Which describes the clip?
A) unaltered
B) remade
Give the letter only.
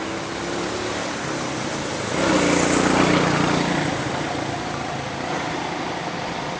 A